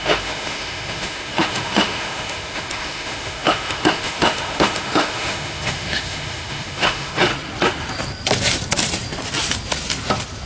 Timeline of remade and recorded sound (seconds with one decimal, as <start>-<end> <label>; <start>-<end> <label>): 0.0-7.3 remade; 7.3-10.5 recorded